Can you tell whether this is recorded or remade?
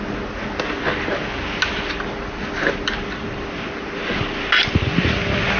recorded